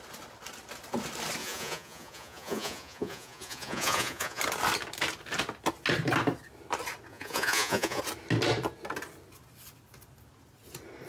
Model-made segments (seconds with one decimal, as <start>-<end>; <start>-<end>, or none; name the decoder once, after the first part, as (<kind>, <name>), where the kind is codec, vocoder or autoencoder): 1.4-4.4 (vocoder, Vocos); 7.1-8.0